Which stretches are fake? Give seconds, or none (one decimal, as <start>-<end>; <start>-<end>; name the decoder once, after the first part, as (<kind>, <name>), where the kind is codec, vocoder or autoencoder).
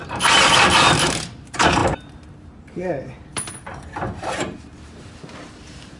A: 0.0-6.0 (vocoder, BigVGAN v2)